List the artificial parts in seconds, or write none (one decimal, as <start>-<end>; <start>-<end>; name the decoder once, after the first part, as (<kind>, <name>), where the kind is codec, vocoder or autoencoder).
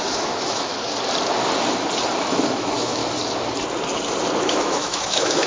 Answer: 0.0-0.7 (autoencoder, DAC-VAE); 2.3-3.0; 4.4-5.5